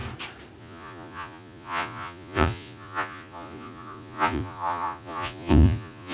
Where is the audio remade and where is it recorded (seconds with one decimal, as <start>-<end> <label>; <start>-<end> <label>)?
0.0-0.6 recorded; 0.6-6.1 remade